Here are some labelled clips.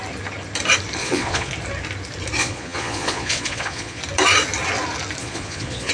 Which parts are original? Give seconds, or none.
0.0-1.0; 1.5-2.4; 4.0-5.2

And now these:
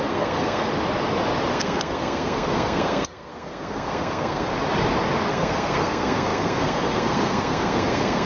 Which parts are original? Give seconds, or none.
0.7-1.5; 4.5-5.3